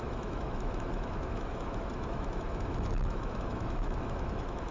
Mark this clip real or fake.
fake